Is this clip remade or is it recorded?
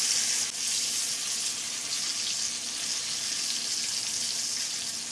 recorded